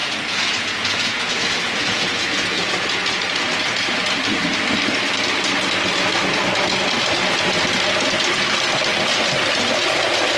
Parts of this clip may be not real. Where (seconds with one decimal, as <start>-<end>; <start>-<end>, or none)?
0.0-2.7